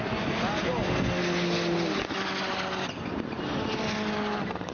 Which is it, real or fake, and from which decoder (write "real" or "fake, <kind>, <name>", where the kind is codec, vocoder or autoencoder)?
real